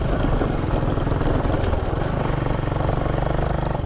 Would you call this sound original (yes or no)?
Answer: yes